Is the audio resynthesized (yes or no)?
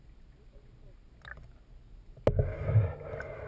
no